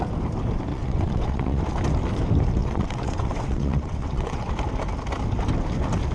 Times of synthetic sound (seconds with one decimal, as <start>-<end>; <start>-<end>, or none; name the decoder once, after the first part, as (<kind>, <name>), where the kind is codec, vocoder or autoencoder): 0.7-1.6 (vocoder, WaveNeXt); 2.6-4.5